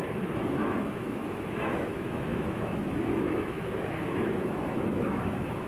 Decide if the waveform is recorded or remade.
remade